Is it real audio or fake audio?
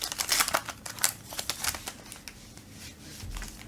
real